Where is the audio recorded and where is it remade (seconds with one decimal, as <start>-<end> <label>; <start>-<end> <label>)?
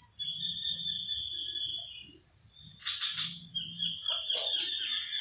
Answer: 0.0-1.7 recorded; 1.7-4.3 remade; 4.3-5.2 recorded